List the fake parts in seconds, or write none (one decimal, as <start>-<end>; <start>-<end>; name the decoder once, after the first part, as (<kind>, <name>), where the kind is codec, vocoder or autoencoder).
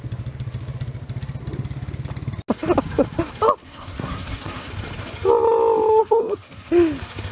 3.6-4.7 (codec, SNAC); 6.0-6.7